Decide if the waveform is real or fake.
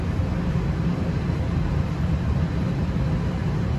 fake